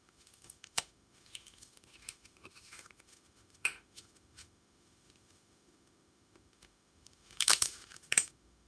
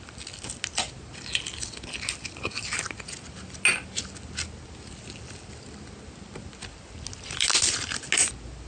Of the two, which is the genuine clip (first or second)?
second